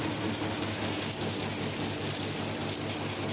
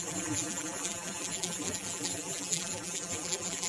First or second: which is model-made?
second